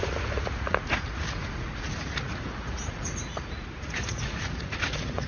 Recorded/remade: remade